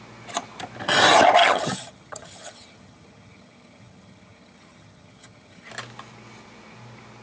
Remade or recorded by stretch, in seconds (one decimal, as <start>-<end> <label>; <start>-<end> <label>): 0.0-1.4 recorded; 1.4-5.7 remade; 5.7-7.2 recorded